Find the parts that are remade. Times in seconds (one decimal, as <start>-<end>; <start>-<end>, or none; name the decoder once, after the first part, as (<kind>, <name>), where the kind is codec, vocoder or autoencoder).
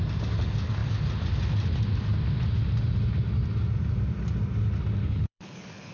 5.0-5.9 (codec, HILCodec)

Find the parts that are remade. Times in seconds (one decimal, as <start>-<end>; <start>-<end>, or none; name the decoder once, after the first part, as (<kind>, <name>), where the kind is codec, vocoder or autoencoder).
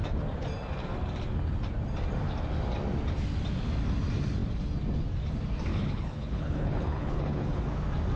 5.7-7.7 (codec, HILCodec)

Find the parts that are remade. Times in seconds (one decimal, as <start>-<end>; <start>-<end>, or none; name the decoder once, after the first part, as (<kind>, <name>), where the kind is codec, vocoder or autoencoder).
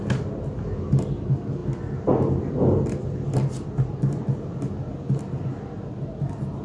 none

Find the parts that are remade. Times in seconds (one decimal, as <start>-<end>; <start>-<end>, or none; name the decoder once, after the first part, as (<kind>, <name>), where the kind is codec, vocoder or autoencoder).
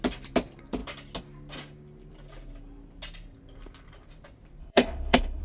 4.6-5.4 (codec, HILCodec)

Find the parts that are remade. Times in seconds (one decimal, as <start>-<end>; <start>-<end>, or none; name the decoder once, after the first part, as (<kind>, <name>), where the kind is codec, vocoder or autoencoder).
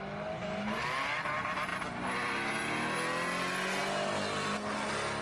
none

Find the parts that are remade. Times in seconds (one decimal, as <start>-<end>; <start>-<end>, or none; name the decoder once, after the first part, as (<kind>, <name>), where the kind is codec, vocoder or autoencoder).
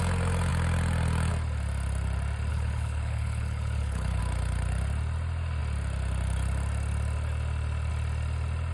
2.5-4.2 (codec, HILCodec)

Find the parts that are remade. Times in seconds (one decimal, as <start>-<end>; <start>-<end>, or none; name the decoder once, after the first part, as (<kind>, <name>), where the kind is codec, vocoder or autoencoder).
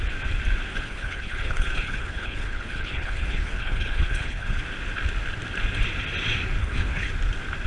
0.7-4.6 (codec, HILCodec); 6.6-7.1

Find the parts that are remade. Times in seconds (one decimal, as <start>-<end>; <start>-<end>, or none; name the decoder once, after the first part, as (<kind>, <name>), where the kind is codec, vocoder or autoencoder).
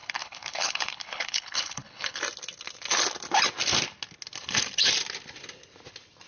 0.0-2.2 (codec, HILCodec)